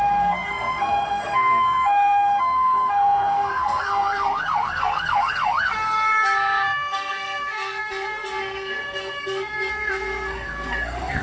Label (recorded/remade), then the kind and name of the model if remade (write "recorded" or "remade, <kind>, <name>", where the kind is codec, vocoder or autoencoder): remade, codec, SNAC